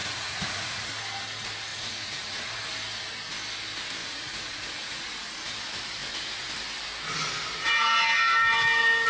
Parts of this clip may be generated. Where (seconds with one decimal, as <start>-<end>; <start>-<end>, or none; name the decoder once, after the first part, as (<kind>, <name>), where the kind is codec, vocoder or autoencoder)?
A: 0.0-0.9 (vocoder, Vocos); 1.7-2.6; 4.0-5.2